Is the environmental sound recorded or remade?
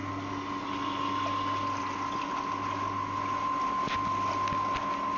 recorded